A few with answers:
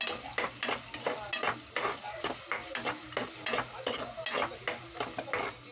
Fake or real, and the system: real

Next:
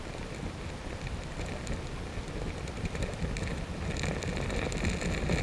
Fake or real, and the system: real